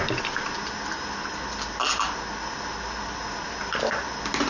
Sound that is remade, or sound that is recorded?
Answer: recorded